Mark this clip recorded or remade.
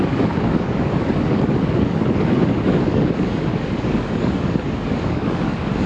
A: remade